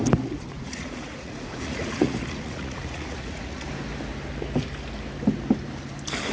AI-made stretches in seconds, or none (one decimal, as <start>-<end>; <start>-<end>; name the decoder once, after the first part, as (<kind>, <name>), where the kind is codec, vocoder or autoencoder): 0.4-3.7 (vocoder, Vocos)